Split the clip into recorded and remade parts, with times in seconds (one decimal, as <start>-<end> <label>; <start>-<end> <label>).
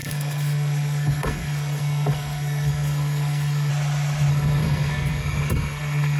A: 0.0-3.7 remade; 3.7-4.3 recorded; 4.3-6.2 remade